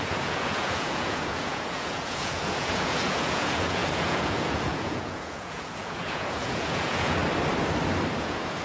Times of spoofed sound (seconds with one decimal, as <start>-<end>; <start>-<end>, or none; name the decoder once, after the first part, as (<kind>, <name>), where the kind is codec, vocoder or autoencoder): 0.0-7.2 (vocoder, Vocos); 8.2-8.6